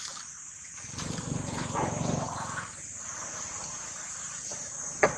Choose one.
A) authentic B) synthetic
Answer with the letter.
B